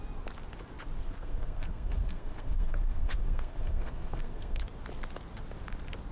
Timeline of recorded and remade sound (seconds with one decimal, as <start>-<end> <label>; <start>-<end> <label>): 0.0-1.0 recorded; 1.0-4.6 remade; 4.6-6.1 recorded